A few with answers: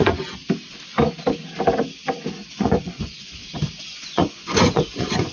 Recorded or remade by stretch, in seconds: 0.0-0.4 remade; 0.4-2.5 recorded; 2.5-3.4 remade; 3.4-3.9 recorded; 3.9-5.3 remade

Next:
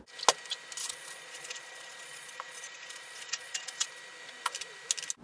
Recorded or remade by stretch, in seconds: 0.0-0.8 recorded; 0.8-3.9 remade; 3.9-5.2 recorded

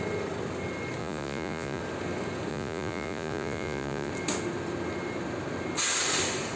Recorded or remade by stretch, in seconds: 0.0-1.0 recorded; 1.0-1.8 remade; 1.8-2.5 recorded; 2.5-4.1 remade; 4.1-6.6 recorded

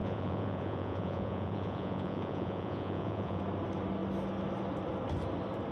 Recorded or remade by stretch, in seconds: 0.0-3.4 remade; 3.4-5.7 recorded

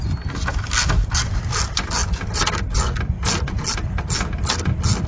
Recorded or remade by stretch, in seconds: 0.0-5.1 recorded

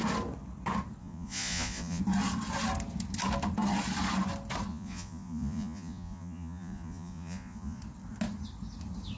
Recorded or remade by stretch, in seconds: 0.0-1.0 recorded; 1.0-2.0 remade; 2.0-4.7 recorded; 4.7-7.8 remade; 7.8-9.2 recorded

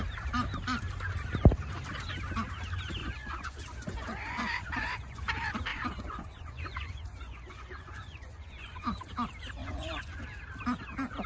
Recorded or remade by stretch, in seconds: 0.0-3.0 recorded; 3.0-5.2 remade; 5.2-5.7 recorded; 5.7-9.0 remade; 9.0-9.6 recorded; 9.6-10.2 remade; 10.2-11.3 recorded

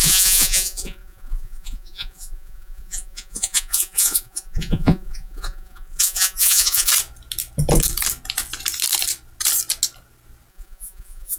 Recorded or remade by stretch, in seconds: 0.0-6.9 remade; 6.9-10.5 recorded; 10.5-11.4 remade